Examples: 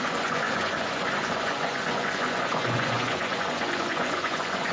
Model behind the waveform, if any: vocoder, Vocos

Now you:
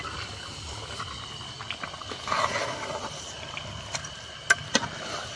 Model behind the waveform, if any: none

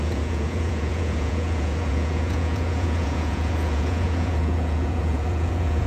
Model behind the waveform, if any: vocoder, Vocos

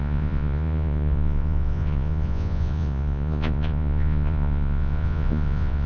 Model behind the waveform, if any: vocoder, Vocos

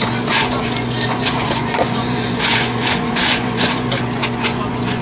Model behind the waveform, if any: vocoder, Vocos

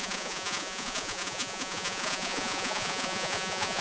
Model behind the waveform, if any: vocoder, Vocos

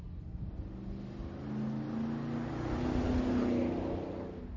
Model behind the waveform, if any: none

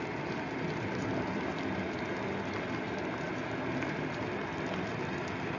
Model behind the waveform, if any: none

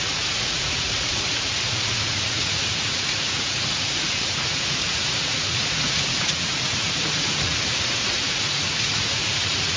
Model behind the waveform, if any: vocoder, Vocos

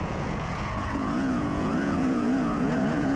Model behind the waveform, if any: vocoder, Vocos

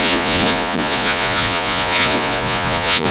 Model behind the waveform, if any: vocoder, Vocos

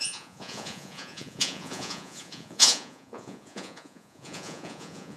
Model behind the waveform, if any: vocoder, Vocos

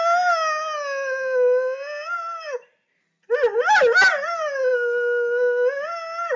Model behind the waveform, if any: none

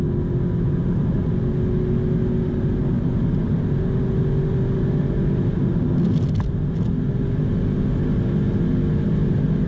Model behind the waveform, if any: none